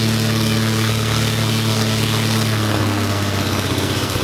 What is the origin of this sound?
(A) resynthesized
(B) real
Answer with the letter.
A